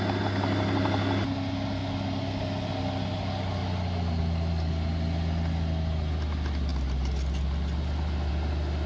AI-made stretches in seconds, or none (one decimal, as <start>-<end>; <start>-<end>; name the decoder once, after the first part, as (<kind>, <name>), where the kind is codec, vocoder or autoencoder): none

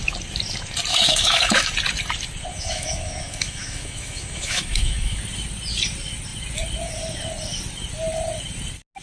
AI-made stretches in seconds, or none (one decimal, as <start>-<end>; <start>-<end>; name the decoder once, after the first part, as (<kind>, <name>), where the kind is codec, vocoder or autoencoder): 0.9-1.7 (autoencoder, DAC-VAE); 2.5-5.2

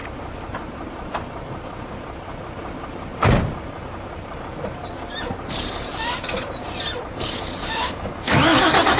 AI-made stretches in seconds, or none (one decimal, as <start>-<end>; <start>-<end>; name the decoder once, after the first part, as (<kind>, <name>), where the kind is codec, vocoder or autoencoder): 7.6-8.6 (autoencoder, DAC-VAE)

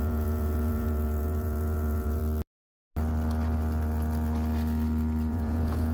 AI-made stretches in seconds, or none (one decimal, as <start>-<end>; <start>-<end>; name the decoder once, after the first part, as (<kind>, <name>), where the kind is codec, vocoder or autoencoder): 0.0-2.2 (vocoder, Vocos); 5.3-5.9